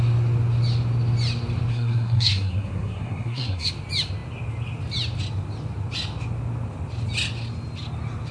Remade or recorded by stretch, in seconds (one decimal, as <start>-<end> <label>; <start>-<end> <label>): 0.0-1.7 recorded; 1.7-3.7 remade; 3.7-8.3 recorded